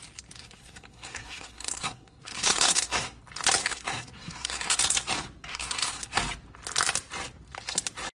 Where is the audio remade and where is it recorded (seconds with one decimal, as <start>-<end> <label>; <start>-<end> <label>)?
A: 0.0-0.4 recorded; 0.4-3.2 remade; 3.2-3.6 recorded; 3.6-4.8 remade; 4.8-5.5 recorded; 5.5-6.2 remade; 6.2-8.1 recorded